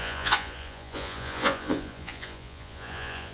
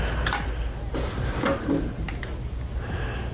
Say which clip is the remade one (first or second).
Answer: first